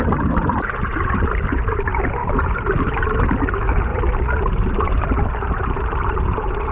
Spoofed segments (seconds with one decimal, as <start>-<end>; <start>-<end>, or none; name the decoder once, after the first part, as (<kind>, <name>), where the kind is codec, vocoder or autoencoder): none